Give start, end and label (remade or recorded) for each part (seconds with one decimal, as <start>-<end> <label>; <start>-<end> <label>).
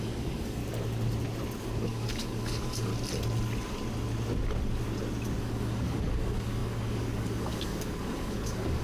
0.0-0.6 remade; 0.6-1.6 recorded; 1.6-2.9 remade; 2.9-5.4 recorded; 5.4-8.8 remade